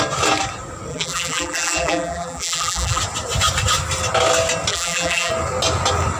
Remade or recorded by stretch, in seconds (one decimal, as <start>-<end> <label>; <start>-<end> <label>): 0.0-0.9 recorded; 0.9-3.0 remade; 3.0-4.7 recorded; 4.7-5.3 remade; 5.3-6.2 recorded